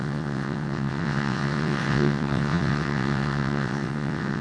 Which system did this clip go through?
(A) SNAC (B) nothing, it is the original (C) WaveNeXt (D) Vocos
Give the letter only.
C